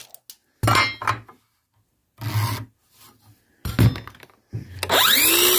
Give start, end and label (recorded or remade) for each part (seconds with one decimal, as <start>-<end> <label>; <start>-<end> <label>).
0.0-5.6 recorded